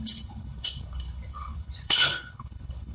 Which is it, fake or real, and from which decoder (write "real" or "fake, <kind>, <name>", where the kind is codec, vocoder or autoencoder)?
fake, codec, HILCodec